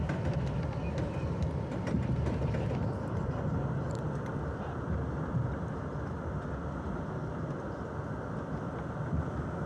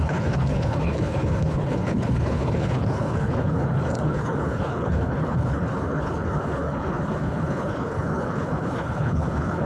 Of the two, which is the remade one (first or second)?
second